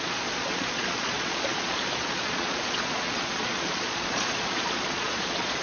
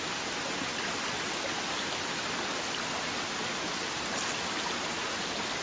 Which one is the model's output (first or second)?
first